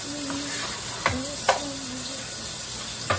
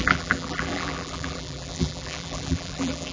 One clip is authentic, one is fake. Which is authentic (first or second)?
first